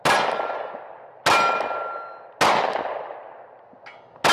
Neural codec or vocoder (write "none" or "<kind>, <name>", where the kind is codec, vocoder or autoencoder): none